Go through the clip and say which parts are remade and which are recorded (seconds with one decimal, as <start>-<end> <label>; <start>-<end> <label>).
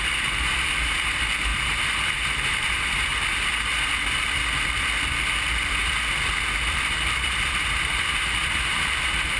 0.0-3.1 remade; 3.1-6.7 recorded; 6.7-9.4 remade